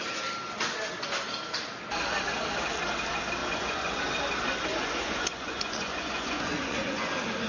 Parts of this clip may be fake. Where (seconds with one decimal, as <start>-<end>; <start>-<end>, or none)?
3.4-4.0; 4.7-7.1